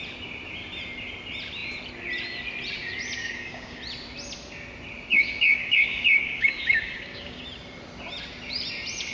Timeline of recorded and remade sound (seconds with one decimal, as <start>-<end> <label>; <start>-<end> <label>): 0.0-3.2 recorded; 3.2-3.8 remade; 3.8-5.1 recorded; 5.1-7.4 remade; 7.4-9.1 recorded